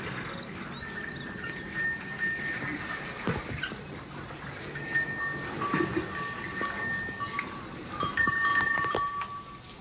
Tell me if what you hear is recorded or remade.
recorded